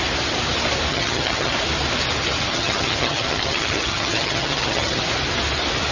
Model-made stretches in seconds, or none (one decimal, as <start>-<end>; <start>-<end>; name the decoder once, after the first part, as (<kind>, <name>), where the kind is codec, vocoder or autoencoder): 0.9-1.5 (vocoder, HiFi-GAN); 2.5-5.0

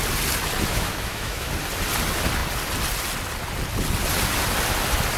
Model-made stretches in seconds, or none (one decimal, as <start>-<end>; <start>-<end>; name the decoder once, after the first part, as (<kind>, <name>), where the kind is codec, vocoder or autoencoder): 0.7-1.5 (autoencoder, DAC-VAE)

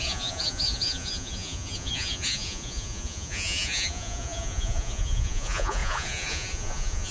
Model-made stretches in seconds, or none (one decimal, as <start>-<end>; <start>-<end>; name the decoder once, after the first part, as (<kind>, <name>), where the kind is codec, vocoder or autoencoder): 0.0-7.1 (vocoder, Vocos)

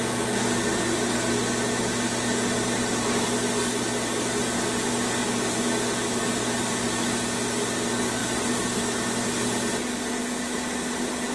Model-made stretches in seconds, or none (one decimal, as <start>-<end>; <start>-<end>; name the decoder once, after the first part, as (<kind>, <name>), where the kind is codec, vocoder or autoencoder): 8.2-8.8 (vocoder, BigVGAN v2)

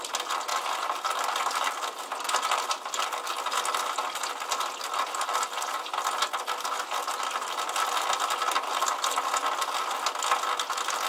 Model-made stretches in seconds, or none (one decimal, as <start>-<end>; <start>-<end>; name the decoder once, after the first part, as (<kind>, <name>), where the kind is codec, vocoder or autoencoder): none

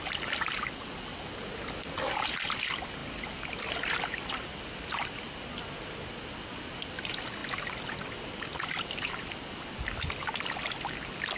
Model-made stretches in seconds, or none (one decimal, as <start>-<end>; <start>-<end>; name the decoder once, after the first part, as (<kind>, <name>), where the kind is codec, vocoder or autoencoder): none